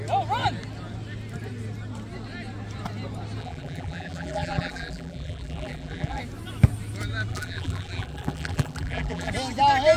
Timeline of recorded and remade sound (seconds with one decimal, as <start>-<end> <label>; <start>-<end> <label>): 0.0-3.4 recorded; 3.4-6.2 remade; 6.2-7.3 recorded; 7.3-9.3 remade; 9.3-10.0 recorded